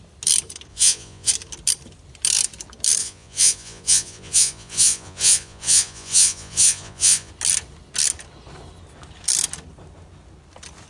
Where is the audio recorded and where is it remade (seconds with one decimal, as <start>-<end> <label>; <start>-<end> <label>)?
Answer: 0.0-0.7 recorded; 0.7-1.3 remade; 1.3-3.0 recorded; 3.0-7.3 remade; 7.3-10.9 recorded